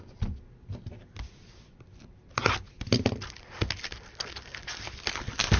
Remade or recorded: recorded